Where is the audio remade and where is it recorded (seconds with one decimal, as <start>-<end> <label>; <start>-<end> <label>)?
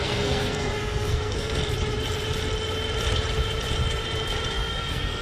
0.0-1.6 remade; 1.6-4.5 recorded; 4.5-5.2 remade